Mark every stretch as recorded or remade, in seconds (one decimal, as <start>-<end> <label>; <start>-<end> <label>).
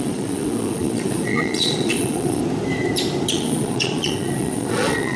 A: 0.0-2.4 remade; 2.4-3.3 recorded; 3.3-5.2 remade